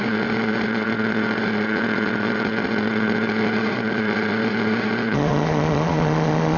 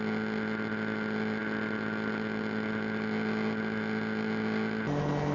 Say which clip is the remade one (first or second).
first